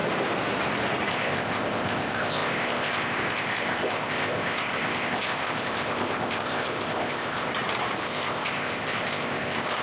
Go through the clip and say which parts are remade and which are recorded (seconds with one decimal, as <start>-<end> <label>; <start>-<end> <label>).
0.0-1.1 recorded; 1.1-7.5 remade; 7.5-8.0 recorded; 8.0-9.8 remade